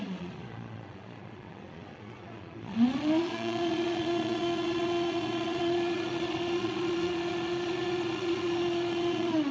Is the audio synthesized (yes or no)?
yes